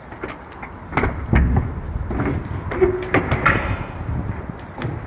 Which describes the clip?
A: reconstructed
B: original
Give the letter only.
B